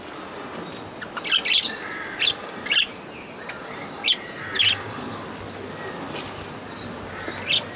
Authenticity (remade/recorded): recorded